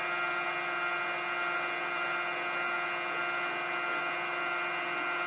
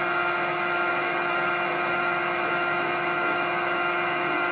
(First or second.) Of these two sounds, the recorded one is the first